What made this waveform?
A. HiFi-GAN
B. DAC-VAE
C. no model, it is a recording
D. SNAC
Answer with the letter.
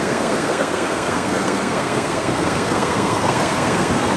D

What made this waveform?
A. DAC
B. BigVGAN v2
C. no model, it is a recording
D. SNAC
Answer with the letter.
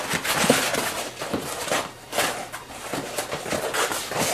C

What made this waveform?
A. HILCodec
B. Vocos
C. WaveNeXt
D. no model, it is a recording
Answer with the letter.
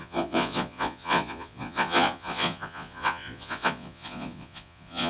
B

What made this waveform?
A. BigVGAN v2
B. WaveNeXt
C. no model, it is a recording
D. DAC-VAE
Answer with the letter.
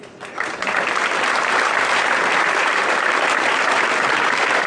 A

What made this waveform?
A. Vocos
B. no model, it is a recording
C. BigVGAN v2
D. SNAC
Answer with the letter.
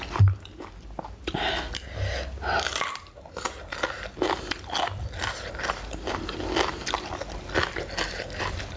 B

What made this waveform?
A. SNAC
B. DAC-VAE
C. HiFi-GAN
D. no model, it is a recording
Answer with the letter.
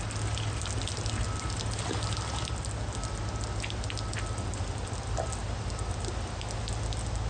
D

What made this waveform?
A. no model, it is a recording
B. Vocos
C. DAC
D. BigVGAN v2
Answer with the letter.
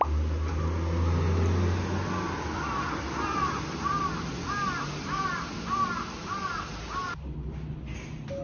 A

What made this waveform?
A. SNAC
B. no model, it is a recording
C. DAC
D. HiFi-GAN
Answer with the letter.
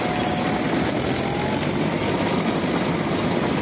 B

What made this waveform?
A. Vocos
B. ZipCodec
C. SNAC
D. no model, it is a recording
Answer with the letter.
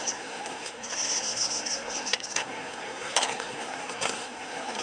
C